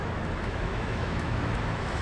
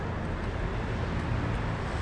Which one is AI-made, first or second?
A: first